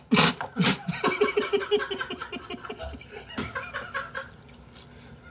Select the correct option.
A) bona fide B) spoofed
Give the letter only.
A